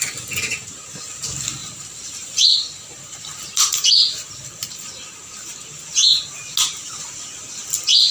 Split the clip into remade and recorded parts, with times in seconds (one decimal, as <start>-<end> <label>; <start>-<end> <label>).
0.0-1.6 recorded; 1.6-4.9 remade; 4.9-8.1 recorded